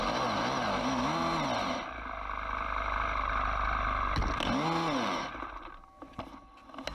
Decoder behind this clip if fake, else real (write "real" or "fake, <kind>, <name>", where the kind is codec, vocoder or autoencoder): real